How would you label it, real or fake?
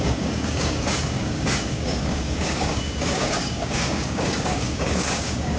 fake